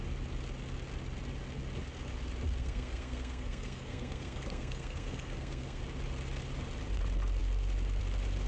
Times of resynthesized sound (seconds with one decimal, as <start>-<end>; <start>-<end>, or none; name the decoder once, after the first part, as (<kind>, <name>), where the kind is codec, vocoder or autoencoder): 2.6-5.8 (codec, SNAC)